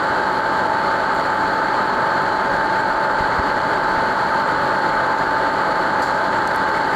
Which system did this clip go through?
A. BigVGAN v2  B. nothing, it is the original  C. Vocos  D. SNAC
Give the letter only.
A